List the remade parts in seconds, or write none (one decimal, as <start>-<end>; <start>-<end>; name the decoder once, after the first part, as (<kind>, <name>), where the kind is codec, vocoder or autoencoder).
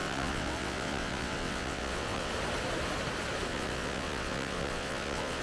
0.0-2.3 (vocoder, WaveNeXt); 3.5-5.4